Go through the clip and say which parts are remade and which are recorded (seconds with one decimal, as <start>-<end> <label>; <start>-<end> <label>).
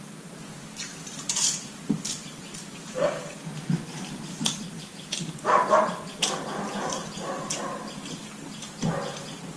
0.0-0.9 recorded; 0.9-3.4 remade; 3.4-3.9 recorded; 3.9-7.5 remade; 7.5-9.6 recorded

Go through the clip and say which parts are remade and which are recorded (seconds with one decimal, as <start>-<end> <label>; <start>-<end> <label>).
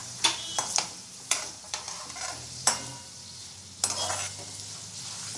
0.0-2.9 remade; 2.9-5.4 recorded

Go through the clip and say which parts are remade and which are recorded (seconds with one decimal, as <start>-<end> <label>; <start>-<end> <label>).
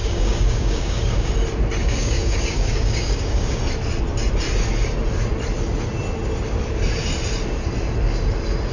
0.0-1.3 remade; 1.3-1.8 recorded; 1.8-3.6 remade; 3.6-8.7 recorded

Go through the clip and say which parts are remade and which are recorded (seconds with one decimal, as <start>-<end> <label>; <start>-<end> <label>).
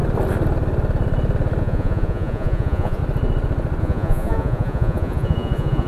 0.0-1.6 recorded; 1.6-3.0 remade; 3.0-3.8 recorded; 3.8-5.9 remade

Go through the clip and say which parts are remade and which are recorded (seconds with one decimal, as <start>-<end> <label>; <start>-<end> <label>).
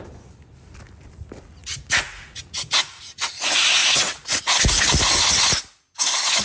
0.0-1.6 recorded; 1.6-3.3 remade; 3.3-3.8 recorded; 3.8-4.4 remade; 4.4-6.4 recorded